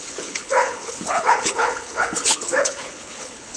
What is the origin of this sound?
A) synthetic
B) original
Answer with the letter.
A